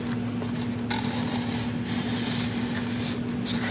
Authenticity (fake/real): real